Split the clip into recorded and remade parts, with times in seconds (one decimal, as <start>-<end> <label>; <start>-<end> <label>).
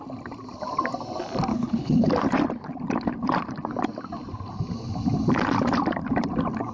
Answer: 0.0-1.5 recorded; 1.5-2.1 remade; 2.1-6.7 recorded